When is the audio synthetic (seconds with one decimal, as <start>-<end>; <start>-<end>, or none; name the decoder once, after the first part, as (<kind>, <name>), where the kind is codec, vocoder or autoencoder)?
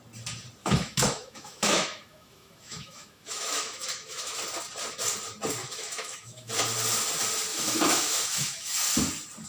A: 0.6-4.4 (autoencoder, DAC-VAE); 5.6-6.5; 7.5-8.9